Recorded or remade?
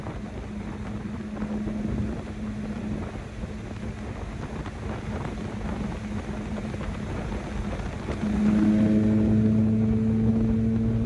recorded